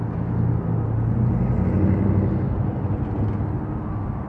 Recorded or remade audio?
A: recorded